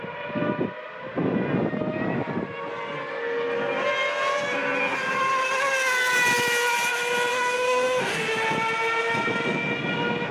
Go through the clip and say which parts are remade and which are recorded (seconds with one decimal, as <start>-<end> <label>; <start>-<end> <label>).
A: 0.0-7.3 recorded; 7.3-8.3 remade; 8.3-10.3 recorded